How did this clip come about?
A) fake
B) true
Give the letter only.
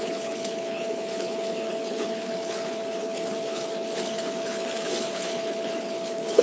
A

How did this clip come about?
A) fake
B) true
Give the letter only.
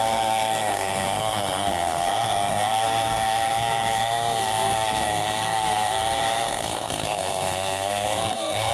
A